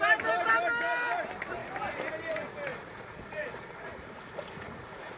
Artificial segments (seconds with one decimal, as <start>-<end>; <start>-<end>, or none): 2.7-5.2